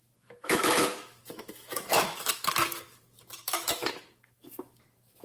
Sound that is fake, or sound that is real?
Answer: fake